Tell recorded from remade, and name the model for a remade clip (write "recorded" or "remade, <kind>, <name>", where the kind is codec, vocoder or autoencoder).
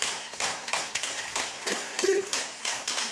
remade, codec, SNAC